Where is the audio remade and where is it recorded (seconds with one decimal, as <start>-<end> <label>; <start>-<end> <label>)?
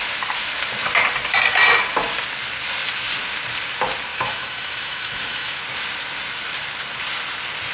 0.0-4.1 recorded; 4.1-5.6 remade; 5.6-7.7 recorded